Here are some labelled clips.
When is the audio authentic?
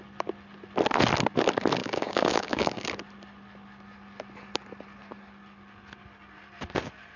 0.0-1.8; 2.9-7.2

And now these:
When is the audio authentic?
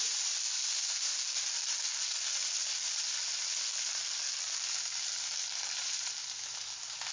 0.0-5.4; 6.3-7.1